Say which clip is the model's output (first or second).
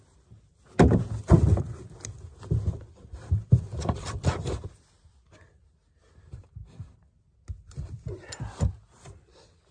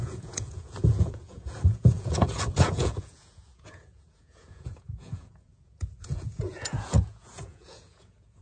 second